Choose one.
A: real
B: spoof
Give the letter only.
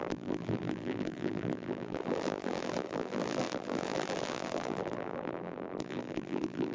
B